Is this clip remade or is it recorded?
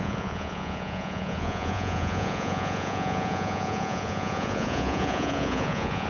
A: remade